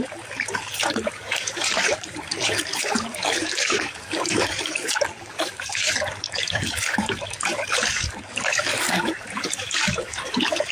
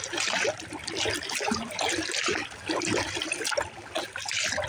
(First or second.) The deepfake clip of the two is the first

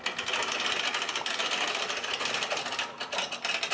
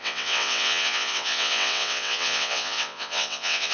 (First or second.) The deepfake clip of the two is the second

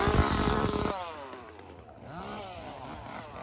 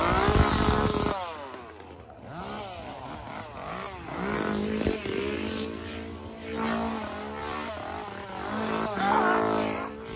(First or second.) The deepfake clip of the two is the first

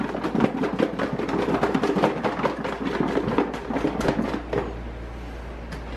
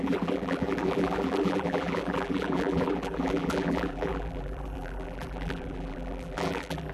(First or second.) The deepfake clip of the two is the second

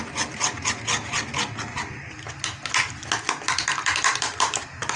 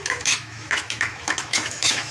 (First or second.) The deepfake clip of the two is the second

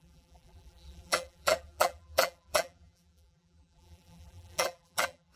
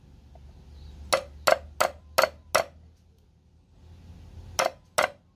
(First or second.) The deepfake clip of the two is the first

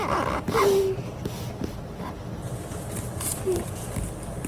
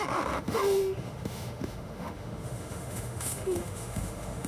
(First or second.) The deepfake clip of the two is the second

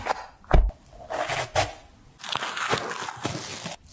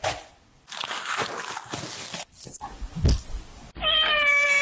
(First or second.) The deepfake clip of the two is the second